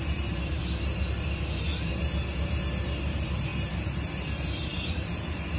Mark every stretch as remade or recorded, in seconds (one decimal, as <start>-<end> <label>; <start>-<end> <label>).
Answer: 0.0-0.6 remade; 0.6-1.1 recorded; 1.1-5.6 remade